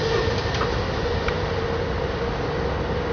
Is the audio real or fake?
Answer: real